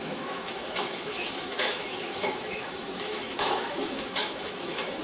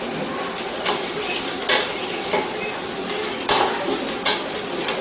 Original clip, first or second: second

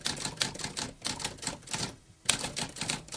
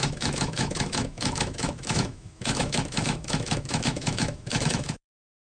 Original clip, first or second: first